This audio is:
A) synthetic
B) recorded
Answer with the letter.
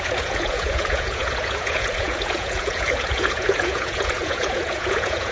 A